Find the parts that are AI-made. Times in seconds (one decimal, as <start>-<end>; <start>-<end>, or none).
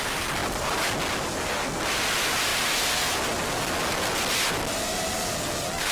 none